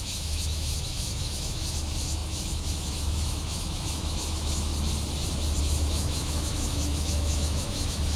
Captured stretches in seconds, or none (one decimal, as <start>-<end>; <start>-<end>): 4.7-5.6